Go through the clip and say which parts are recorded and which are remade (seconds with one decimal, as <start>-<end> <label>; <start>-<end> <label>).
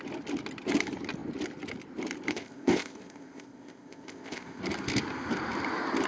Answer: 0.0-2.3 recorded; 2.3-4.6 remade; 4.6-6.1 recorded